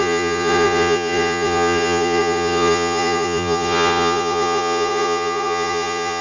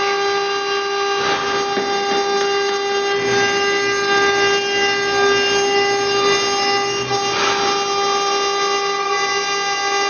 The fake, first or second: first